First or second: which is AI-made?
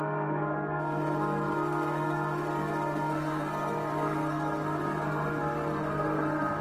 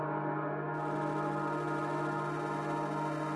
first